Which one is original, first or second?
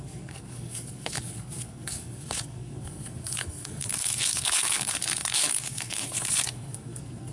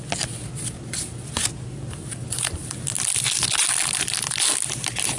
second